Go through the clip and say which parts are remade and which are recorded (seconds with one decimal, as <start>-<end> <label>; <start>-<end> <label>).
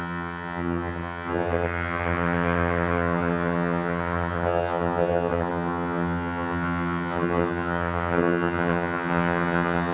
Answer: 0.0-9.9 remade